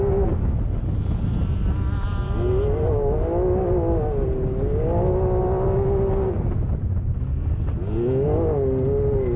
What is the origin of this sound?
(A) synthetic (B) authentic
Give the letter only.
B